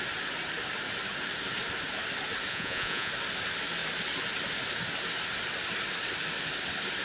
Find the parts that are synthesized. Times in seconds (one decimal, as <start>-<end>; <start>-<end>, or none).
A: 2.5-3.1